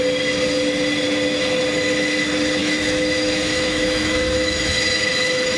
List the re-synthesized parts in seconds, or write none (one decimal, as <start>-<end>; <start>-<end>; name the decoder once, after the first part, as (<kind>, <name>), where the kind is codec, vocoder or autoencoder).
2.6-5.6 (autoencoder, DAC-VAE)